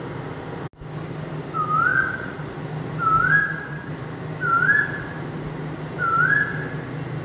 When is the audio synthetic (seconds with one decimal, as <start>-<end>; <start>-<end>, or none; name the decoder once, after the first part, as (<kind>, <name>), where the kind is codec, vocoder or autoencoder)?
1.9-2.6 (vocoder, Vocos); 3.4-3.9